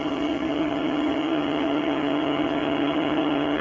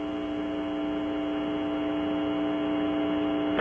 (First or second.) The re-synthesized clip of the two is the first